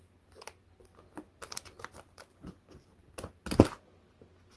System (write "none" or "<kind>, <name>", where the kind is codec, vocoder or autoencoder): none